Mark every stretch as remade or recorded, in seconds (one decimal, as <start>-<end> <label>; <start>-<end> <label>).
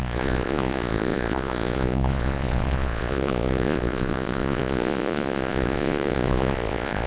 0.0-7.1 remade